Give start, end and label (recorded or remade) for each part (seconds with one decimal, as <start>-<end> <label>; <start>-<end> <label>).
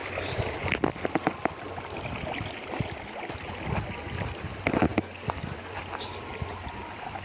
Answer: 0.0-7.2 recorded